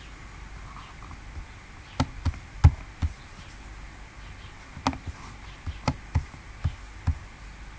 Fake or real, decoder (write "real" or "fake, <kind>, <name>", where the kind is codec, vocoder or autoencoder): real